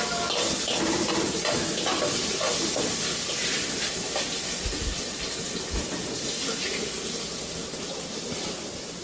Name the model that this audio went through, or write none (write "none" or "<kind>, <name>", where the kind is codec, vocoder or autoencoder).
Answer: none